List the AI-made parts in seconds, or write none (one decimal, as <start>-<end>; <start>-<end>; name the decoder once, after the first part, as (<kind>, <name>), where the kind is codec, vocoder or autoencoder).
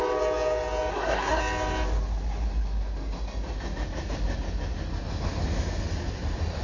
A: 0.9-1.4 (codec, SNAC)